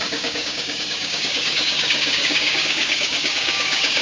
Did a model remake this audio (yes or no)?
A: yes